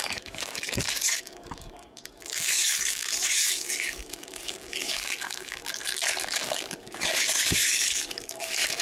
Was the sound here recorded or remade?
remade